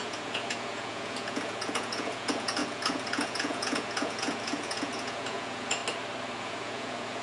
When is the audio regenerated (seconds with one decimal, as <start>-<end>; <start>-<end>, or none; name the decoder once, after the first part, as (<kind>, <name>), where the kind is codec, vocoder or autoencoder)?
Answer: 0.0-5.8 (vocoder, Vocos); 6.4-7.2